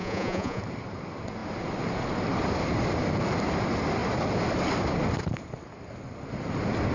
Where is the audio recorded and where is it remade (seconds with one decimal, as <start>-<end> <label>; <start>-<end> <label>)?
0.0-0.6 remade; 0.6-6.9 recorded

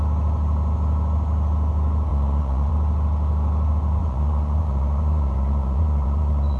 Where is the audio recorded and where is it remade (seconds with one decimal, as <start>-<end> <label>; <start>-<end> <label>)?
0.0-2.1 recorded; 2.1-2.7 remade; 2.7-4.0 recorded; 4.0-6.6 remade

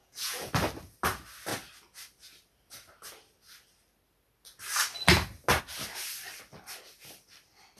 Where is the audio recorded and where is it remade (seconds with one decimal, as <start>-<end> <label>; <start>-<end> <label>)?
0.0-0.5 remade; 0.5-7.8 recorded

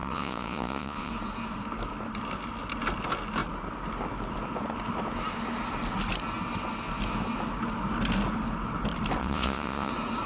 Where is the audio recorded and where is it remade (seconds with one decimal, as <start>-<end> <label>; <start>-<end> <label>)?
0.0-1.1 remade; 1.1-9.2 recorded; 9.2-9.9 remade; 9.9-10.3 recorded